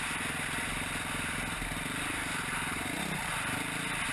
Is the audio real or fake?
real